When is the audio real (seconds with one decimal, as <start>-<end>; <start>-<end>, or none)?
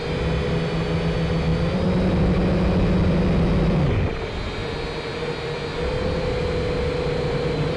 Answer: 0.0-1.5; 2.4-4.6; 7.3-7.8